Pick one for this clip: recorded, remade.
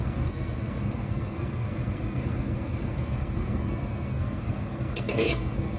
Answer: remade